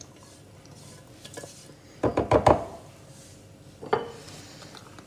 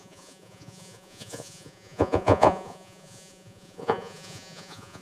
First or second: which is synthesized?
second